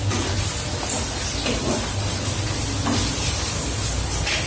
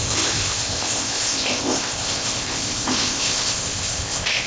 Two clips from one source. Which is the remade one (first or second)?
second